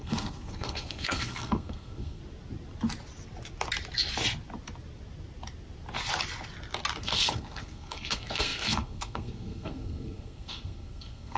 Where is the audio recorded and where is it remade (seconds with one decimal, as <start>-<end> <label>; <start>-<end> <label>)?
0.0-2.2 remade; 2.2-7.0 recorded; 7.0-11.4 remade